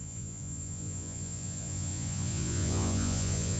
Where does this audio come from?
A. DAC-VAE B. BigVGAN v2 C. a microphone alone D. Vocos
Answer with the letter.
D